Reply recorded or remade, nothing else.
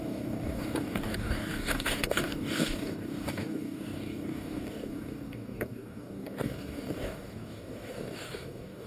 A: remade